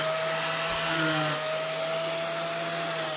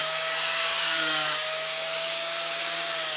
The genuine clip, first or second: first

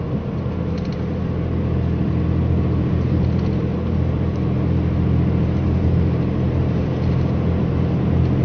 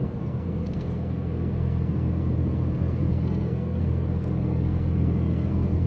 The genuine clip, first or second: first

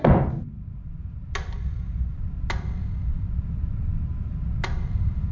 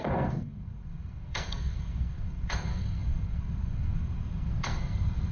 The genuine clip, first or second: first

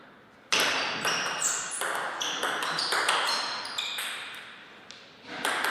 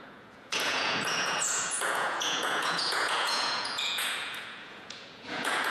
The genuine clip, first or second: first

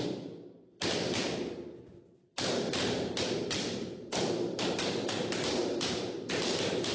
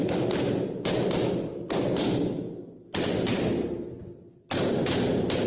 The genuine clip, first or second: second